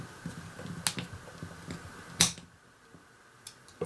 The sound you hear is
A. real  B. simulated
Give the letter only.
A